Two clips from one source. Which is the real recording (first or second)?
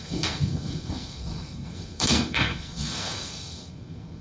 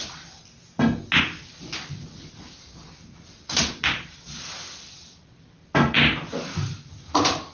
second